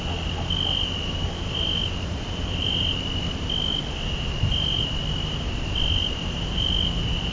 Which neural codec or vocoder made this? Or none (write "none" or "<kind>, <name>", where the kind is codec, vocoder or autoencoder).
none